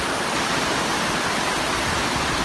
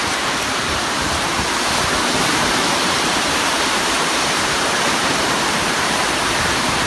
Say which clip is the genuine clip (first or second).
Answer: first